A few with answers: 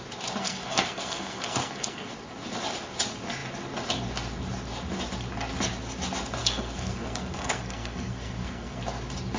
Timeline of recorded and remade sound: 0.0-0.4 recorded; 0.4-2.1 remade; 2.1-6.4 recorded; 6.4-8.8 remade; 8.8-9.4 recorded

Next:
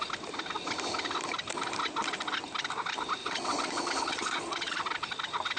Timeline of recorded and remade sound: 0.0-3.2 recorded; 3.2-4.8 remade; 4.8-5.6 recorded

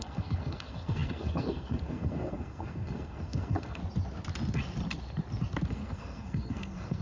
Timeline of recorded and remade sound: 0.0-3.8 remade; 3.8-5.7 recorded; 5.7-7.0 remade